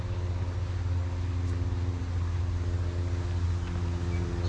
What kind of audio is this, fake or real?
real